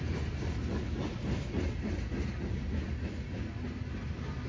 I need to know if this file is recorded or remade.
recorded